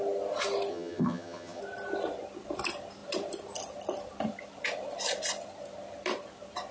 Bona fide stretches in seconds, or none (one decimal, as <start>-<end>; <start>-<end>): 0.0-0.7; 1.6-6.7

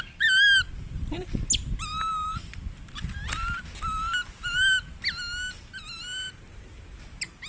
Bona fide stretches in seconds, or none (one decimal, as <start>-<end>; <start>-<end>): 0.0-7.5

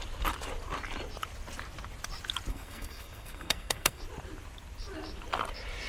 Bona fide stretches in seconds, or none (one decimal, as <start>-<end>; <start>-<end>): 0.0-2.5; 4.0-5.9

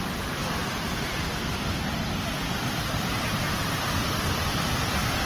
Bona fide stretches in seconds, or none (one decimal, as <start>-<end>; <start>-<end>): 0.0-5.3